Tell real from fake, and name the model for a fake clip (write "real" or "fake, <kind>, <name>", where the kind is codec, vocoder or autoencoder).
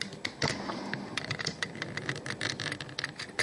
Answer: real